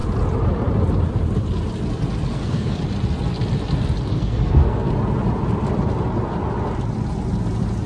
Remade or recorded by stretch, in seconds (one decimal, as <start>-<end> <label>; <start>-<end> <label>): 0.0-2.3 recorded; 2.3-2.8 remade; 2.8-4.1 recorded; 4.1-4.9 remade; 4.9-7.9 recorded

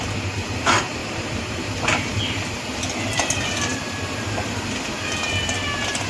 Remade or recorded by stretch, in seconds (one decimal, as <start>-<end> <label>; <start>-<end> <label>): 0.0-1.0 recorded; 1.0-2.2 remade; 2.2-6.1 recorded

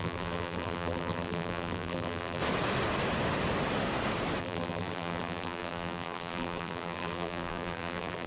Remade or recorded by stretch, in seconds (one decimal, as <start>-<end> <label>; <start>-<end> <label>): 0.0-2.4 remade; 2.4-4.4 recorded; 4.4-8.3 remade

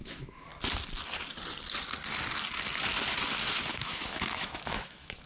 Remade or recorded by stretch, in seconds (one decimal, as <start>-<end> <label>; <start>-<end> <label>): 0.0-0.5 remade; 0.5-3.7 recorded; 3.7-5.3 remade

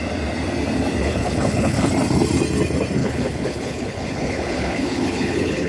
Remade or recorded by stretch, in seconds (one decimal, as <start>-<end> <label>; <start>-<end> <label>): 0.0-1.0 recorded; 1.0-1.9 remade; 1.9-3.0 recorded; 3.0-5.7 remade

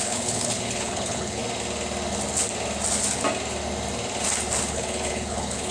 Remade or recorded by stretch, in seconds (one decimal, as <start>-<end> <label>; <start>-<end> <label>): 0.0-1.4 remade; 1.4-4.7 recorded; 4.7-5.7 remade

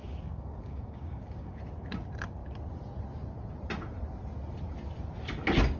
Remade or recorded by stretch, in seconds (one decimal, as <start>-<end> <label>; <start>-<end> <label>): 0.0-1.6 remade; 1.6-5.8 recorded

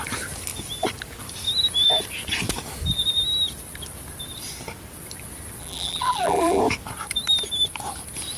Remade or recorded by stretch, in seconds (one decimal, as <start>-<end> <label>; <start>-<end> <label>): 0.0-5.6 recorded; 5.6-6.6 remade; 6.6-8.4 recorded